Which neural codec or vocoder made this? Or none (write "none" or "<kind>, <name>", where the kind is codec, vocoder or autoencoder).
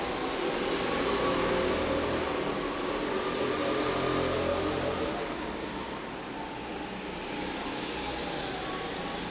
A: none